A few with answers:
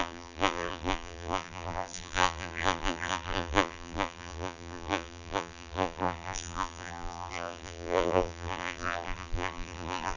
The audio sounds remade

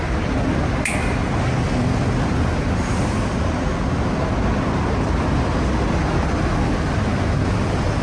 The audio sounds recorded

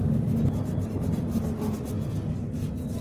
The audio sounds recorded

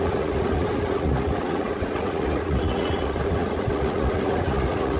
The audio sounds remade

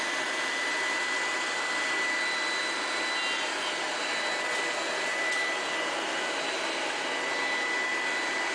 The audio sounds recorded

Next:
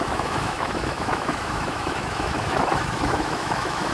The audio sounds remade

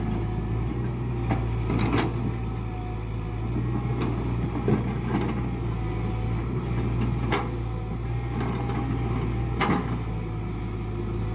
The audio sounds recorded